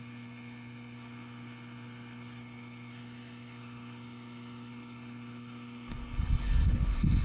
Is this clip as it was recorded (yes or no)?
no